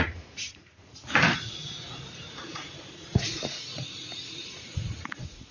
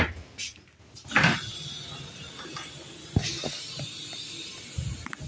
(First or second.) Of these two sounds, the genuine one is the second